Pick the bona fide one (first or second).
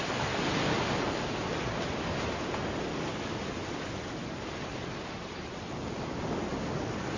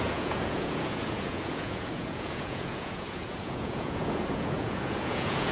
first